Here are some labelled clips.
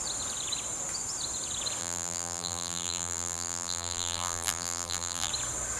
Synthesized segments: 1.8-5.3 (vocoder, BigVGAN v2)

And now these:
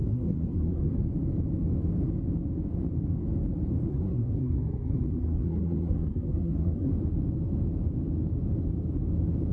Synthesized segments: 0.0-1.0 (codec, SNAC); 3.9-6.9

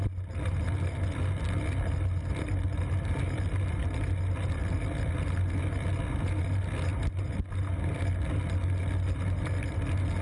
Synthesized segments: none

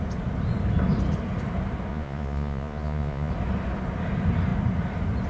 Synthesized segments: 1.9-3.3 (vocoder, Vocos)

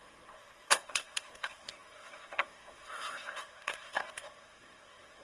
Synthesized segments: 0.0-5.2 (codec, SNAC)

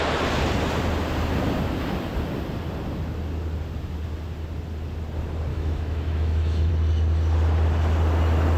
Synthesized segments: 5.5-6.7 (autoencoder, DAC-VAE)

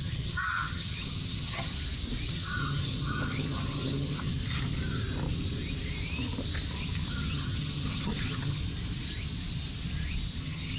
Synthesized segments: 0.0-1.7 (vocoder, HiFi-GAN); 2.3-4.3; 7.1-8.6; 10.4-10.8